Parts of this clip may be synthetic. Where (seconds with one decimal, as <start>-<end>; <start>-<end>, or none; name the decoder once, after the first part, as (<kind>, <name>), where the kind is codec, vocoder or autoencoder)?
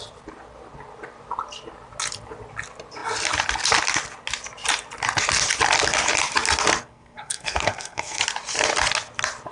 6.8-8.2 (codec, SNAC)